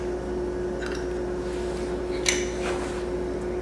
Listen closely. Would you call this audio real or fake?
real